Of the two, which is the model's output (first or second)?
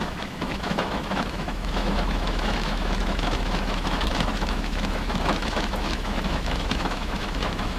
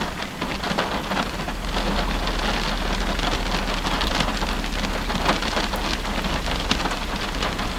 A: first